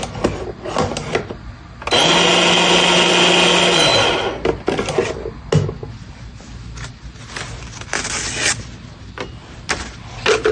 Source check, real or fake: real